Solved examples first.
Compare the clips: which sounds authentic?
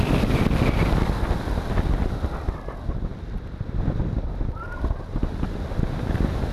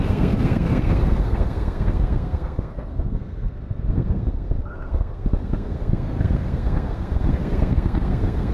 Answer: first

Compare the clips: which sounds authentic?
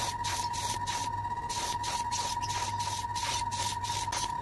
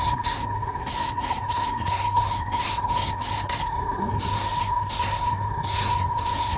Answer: first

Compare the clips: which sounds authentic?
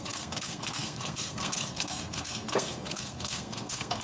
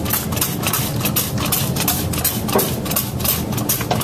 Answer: second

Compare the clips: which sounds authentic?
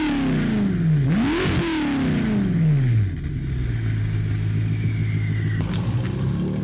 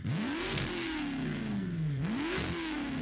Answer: first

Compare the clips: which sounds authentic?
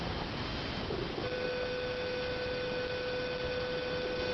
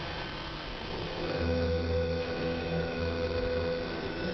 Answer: first